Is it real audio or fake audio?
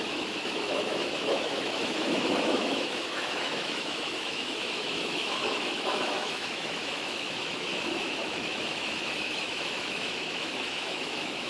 fake